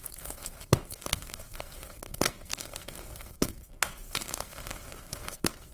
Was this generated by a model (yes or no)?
yes